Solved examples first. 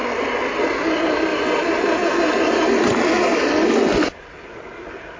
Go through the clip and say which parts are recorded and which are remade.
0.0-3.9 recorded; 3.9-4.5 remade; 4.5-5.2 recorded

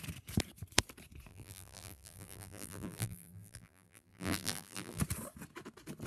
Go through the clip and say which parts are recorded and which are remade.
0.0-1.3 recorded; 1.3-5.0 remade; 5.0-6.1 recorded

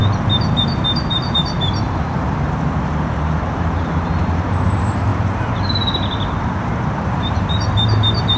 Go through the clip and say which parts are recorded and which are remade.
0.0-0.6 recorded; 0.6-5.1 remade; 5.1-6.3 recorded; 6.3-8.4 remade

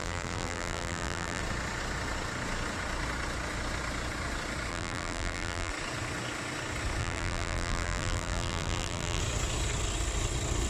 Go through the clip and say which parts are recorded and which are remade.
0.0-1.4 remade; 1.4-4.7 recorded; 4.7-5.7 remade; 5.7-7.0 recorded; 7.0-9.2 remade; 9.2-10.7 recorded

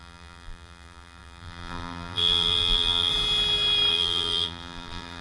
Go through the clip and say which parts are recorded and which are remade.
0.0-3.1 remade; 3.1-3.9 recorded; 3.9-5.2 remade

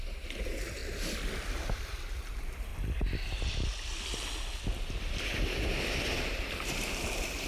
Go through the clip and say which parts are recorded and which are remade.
0.0-0.8 remade; 0.8-1.6 recorded; 1.6-2.7 remade; 2.7-6.2 recorded; 6.2-7.5 remade

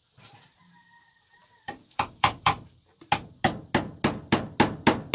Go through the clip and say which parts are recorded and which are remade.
0.0-0.5 recorded; 0.5-3.1 remade; 3.1-5.1 recorded